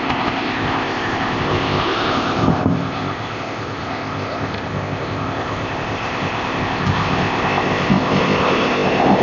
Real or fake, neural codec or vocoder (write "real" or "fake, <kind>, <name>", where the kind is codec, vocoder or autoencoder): fake, codec, ZipCodec